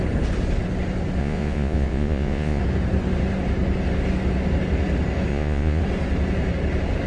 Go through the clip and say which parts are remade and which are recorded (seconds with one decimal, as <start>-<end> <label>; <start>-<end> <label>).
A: 0.0-1.2 recorded; 1.2-2.6 remade; 2.6-5.3 recorded; 5.3-5.8 remade; 5.8-7.1 recorded